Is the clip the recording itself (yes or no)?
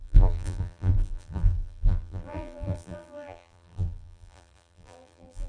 no